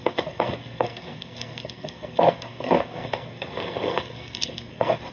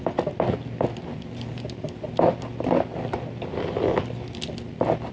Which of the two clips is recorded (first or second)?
second